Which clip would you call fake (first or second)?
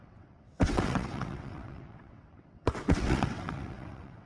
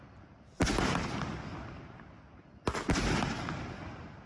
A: first